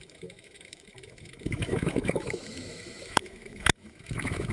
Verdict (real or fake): fake